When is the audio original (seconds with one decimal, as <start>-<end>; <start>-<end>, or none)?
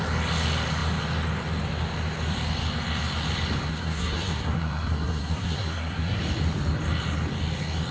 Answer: 0.0-3.7; 6.2-7.9